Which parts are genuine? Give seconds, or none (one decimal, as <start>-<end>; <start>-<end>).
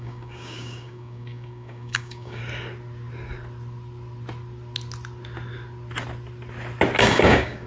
2.4-7.0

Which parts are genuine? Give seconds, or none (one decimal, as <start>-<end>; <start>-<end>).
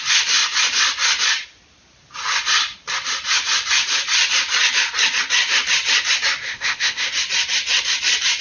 0.0-6.4; 7.1-8.4